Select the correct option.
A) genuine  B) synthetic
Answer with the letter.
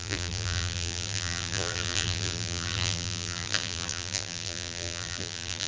B